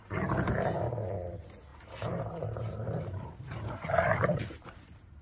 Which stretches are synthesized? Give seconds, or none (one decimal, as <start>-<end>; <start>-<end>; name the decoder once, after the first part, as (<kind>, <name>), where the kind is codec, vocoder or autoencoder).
0.0-5.2 (vocoder, BigVGAN v2)